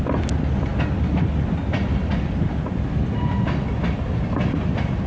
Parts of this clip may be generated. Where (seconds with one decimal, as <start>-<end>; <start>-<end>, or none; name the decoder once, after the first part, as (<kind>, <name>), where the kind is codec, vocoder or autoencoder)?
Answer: none